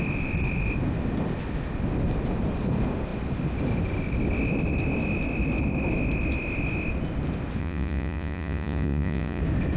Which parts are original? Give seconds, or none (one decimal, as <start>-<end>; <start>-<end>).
0.0-7.6; 9.4-9.8